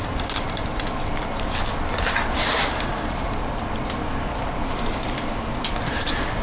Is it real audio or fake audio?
real